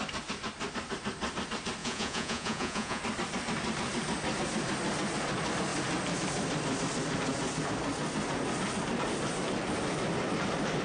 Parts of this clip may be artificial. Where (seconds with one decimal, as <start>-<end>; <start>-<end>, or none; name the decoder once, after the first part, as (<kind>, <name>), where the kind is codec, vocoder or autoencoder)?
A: 1.8-3.0 (vocoder, Vocos)